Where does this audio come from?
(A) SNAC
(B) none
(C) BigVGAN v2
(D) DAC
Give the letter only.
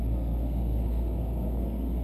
A